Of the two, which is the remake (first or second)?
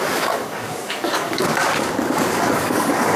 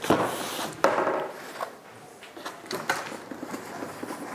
first